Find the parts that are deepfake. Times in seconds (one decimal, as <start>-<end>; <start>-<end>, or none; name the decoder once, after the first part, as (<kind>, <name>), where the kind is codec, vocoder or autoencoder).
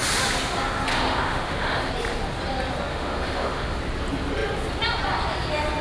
0.9-1.9 (autoencoder, DAC-VAE); 2.9-3.8